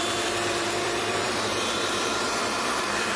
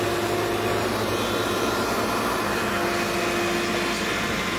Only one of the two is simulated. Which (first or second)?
first